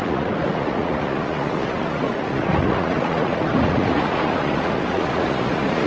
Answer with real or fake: fake